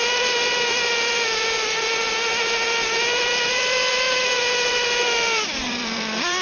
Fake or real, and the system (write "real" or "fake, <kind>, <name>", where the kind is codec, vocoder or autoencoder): fake, vocoder, BigVGAN v2